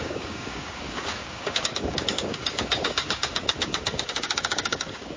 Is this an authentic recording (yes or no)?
no